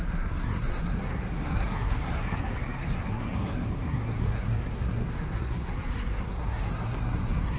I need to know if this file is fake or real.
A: fake